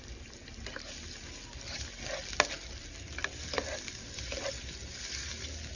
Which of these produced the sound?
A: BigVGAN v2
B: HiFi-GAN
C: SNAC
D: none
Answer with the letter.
D